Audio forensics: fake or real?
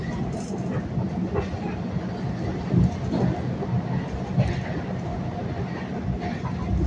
real